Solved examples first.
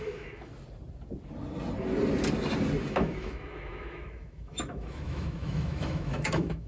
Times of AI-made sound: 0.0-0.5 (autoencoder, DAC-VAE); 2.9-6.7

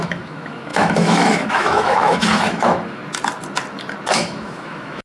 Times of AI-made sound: 0.0-3.0 (autoencoder, DAC-VAE); 4.1-5.0

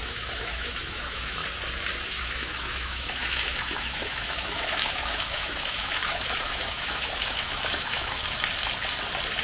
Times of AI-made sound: 0.0-1.4 (autoencoder, DAC-VAE); 2.2-8.2

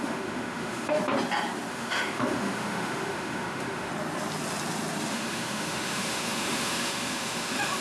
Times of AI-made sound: 0.0-1.0 (autoencoder, DAC-VAE); 1.7-3.9; 5.1-7.8

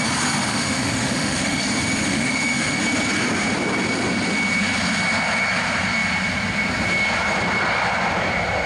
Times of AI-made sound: 0.5-1.6 (autoencoder, DAC-VAE); 2.1-2.8

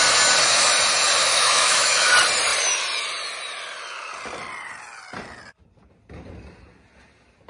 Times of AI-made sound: 1.2-2.1 (autoencoder, DAC-VAE)